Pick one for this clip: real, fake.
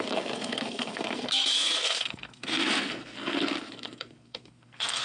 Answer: fake